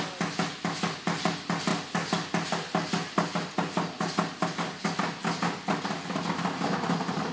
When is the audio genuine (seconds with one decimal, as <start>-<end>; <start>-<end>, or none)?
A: 0.0-7.3